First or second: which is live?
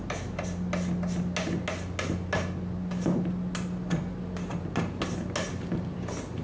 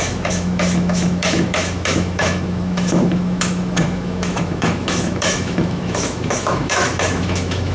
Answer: first